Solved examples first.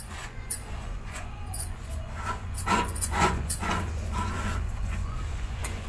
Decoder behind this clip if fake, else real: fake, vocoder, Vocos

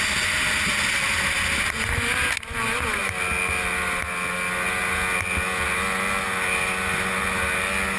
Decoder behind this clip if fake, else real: real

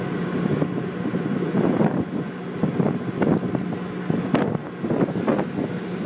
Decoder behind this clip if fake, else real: real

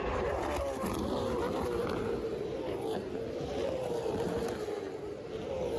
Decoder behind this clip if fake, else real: real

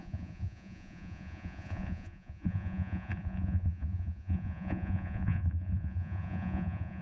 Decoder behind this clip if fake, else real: fake, vocoder, Vocos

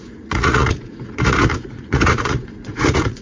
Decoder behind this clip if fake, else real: fake, vocoder, Vocos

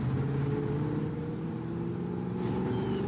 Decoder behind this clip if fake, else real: real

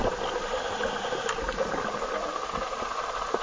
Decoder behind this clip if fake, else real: real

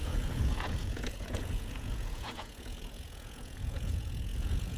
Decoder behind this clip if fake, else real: fake, vocoder, Vocos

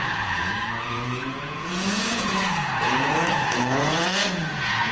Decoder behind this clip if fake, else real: fake, vocoder, Vocos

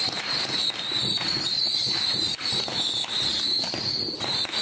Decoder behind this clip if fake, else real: real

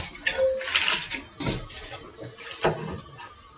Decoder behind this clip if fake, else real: real